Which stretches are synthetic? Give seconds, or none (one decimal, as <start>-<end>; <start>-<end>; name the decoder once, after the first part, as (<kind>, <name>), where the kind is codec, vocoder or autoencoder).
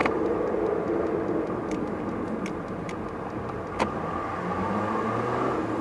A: none